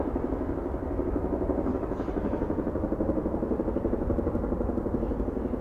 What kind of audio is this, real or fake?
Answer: real